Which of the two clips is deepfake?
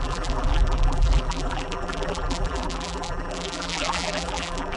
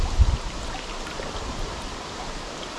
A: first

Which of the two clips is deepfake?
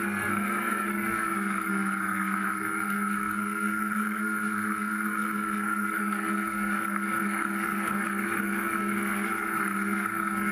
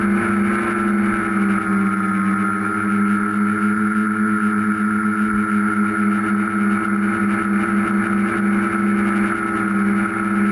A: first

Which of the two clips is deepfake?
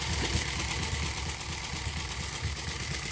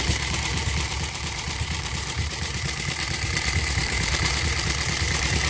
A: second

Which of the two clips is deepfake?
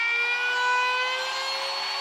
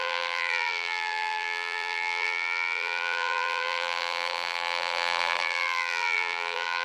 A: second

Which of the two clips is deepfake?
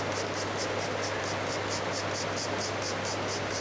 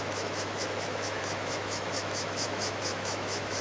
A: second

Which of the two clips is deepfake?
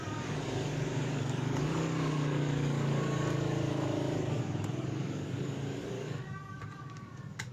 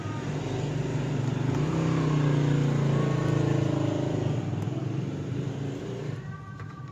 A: first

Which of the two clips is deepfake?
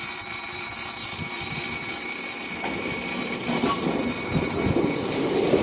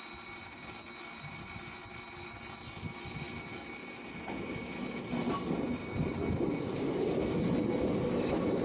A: first